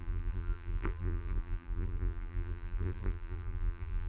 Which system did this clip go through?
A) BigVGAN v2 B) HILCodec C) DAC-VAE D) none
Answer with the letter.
A